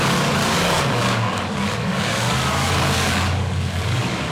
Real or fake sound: fake